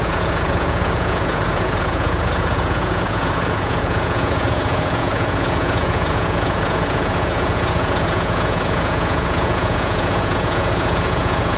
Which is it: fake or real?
fake